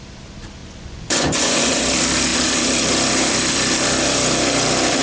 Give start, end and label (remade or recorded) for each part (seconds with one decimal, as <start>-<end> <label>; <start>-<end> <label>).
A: 0.0-0.6 recorded; 0.6-1.8 remade; 1.8-5.0 recorded